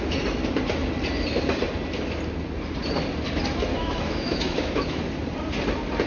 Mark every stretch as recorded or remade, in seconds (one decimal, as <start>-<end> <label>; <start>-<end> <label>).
0.0-3.7 recorded; 3.7-5.0 remade; 5.0-6.1 recorded